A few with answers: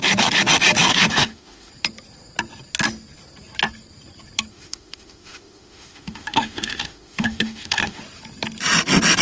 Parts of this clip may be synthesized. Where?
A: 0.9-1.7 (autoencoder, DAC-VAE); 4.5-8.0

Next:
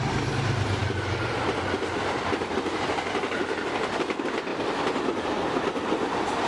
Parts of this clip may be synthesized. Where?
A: none

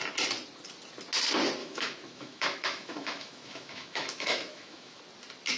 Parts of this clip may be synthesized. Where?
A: 1.6-5.0 (autoencoder, DAC-VAE)

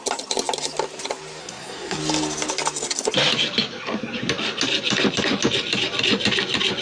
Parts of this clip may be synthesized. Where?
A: 1.4-2.0 (codec, SNAC)

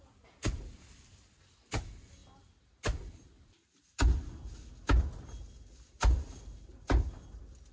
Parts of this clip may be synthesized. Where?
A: none

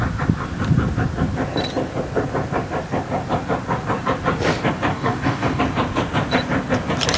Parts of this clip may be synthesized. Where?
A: 4.9-5.6 (codec, DAC)

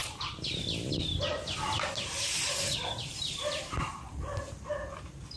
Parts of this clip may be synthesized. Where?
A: 0.0-0.6 (vocoder, BigVGAN v2); 1.3-4.4